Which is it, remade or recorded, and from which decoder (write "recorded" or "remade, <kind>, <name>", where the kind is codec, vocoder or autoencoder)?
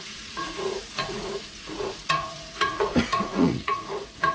remade, vocoder, Vocos